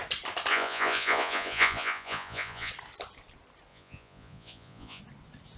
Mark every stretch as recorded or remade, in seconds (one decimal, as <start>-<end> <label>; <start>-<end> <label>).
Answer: 0.0-0.5 recorded; 0.5-2.7 remade; 2.7-3.7 recorded; 3.7-5.0 remade; 5.0-5.6 recorded